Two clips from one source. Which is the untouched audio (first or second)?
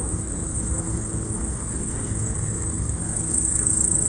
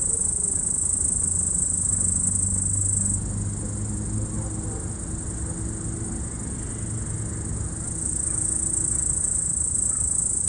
second